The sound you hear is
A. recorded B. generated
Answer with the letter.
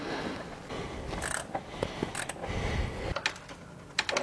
A